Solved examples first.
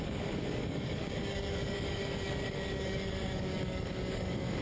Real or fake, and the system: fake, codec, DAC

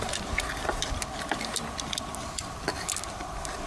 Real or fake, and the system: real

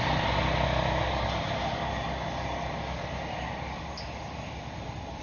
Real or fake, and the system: real